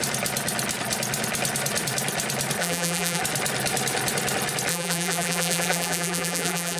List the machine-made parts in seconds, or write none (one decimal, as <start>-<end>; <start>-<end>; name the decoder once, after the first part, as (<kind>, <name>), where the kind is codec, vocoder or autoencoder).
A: 2.6-3.2 (vocoder, BigVGAN v2); 4.7-6.8